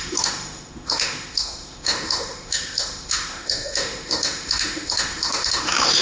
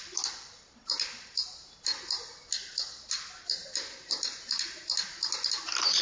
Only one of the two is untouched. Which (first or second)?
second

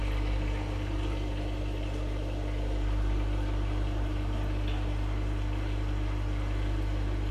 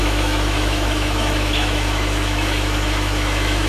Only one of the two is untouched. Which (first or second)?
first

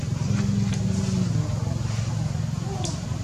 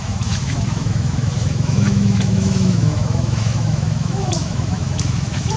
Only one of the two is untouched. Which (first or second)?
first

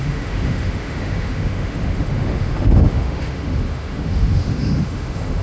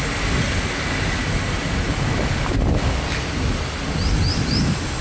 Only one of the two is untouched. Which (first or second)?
second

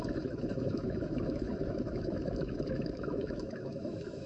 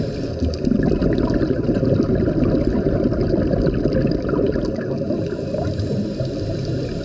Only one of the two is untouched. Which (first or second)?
second